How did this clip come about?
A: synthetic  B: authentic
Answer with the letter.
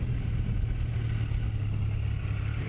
B